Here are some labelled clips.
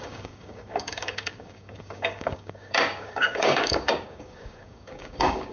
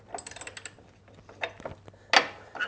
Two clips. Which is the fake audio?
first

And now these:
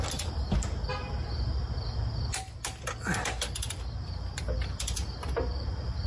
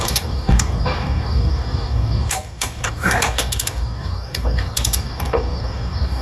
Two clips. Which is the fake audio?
second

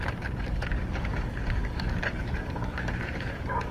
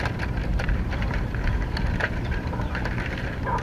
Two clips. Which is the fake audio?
first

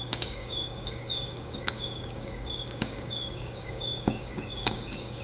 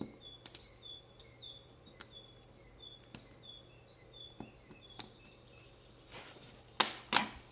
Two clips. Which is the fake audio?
first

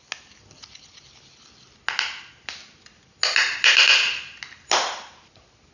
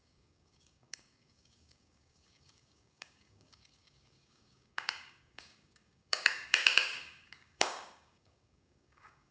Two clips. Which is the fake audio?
second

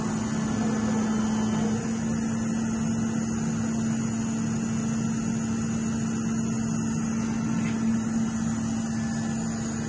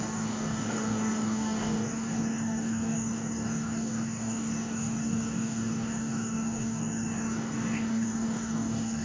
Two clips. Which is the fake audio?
second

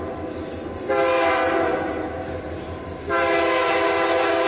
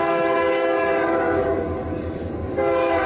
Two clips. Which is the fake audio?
second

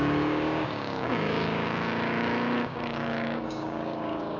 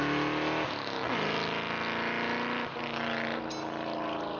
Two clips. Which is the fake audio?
first